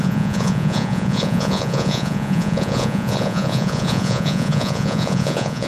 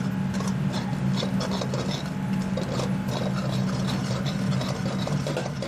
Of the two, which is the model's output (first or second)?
first